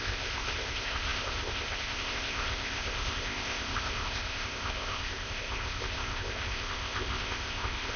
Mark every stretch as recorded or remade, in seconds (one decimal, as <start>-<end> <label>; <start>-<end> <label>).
0.0-8.0 remade

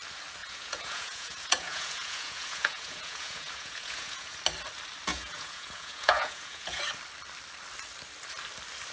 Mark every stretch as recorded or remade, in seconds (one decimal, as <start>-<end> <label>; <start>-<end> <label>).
0.0-0.4 recorded; 0.4-4.4 remade; 4.4-5.1 recorded; 5.1-6.8 remade; 6.8-8.9 recorded

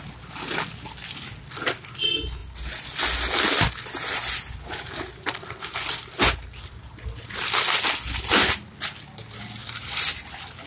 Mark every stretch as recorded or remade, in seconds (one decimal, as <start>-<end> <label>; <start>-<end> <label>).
0.0-9.6 recorded; 9.6-10.1 remade; 10.1-10.7 recorded

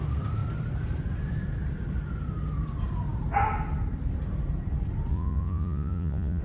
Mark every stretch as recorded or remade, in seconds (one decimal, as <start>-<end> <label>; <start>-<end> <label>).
0.0-5.1 recorded; 5.1-6.4 remade

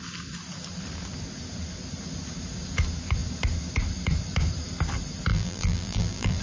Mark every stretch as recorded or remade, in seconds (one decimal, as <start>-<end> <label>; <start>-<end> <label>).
0.0-5.3 recorded; 5.3-6.4 remade

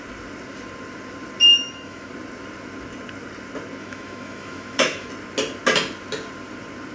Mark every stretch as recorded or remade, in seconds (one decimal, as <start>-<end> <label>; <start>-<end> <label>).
0.0-1.5 recorded; 1.5-2.1 remade; 2.1-3.8 recorded; 3.8-5.1 remade; 5.1-6.9 recorded

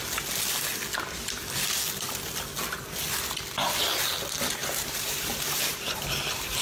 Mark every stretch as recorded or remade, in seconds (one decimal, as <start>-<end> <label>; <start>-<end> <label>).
0.0-4.6 recorded; 4.6-6.6 remade